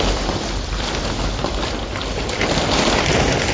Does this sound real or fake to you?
fake